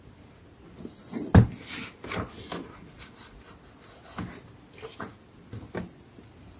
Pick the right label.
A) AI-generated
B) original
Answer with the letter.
B